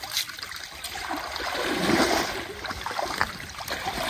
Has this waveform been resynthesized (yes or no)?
no